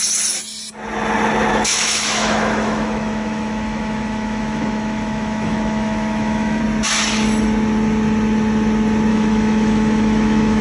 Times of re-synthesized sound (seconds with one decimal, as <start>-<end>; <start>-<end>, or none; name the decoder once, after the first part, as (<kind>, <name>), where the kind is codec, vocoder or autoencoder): 1.5-6.6 (autoencoder, DAC-VAE); 9.1-10.6